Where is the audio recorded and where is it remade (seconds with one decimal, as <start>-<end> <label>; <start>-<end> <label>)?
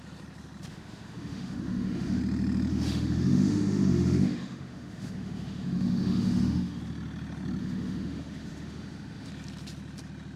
0.0-0.7 recorded; 0.7-2.2 remade; 2.2-2.7 recorded; 2.7-6.8 remade; 6.8-7.6 recorded; 7.6-9.3 remade; 9.3-10.4 recorded